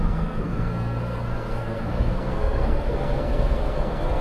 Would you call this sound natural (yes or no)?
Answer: no